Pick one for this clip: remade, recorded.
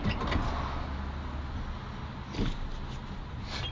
recorded